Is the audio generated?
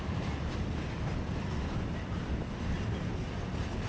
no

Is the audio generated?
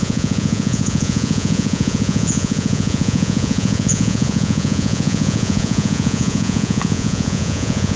yes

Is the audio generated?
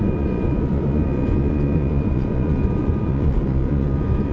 yes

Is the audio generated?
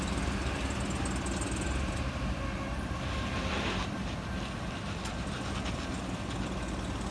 no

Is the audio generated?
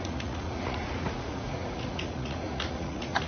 yes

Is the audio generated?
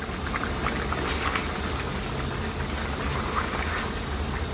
no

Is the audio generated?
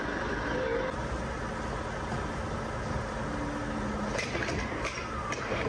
no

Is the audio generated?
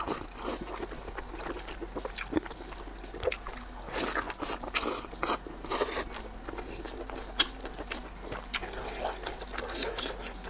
no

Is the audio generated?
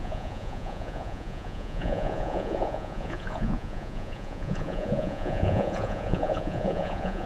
yes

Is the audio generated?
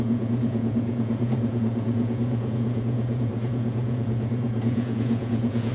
yes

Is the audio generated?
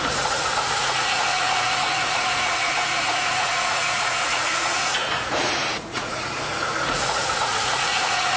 yes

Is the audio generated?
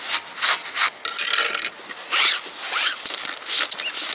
no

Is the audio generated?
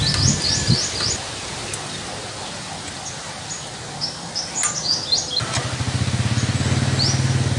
no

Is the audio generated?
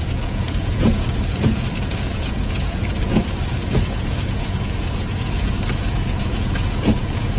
yes